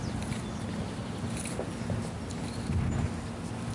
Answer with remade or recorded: recorded